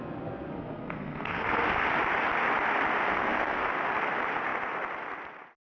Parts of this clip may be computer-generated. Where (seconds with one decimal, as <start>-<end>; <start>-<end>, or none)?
0.6-1.7; 3.1-3.7